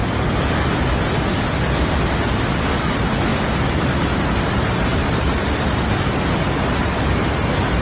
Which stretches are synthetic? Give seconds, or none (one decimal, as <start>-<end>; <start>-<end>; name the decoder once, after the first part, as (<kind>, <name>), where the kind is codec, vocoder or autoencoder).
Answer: 3.3-5.4 (vocoder, BigVGAN v2)